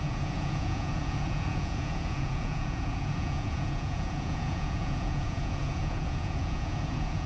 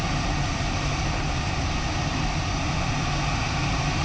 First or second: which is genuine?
second